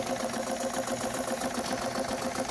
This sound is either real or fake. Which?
real